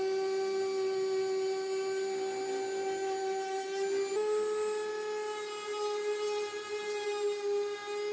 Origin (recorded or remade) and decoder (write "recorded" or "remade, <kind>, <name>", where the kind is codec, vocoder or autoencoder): recorded